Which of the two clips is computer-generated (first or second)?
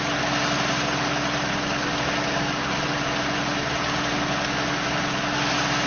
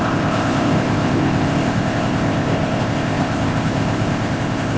second